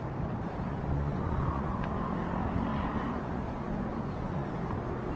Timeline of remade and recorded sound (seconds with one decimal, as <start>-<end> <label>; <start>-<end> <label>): 0.0-0.7 recorded; 0.7-2.1 remade; 2.1-2.7 recorded; 2.7-4.5 remade; 4.5-5.2 recorded